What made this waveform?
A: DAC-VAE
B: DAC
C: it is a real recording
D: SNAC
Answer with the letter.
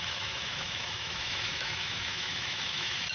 A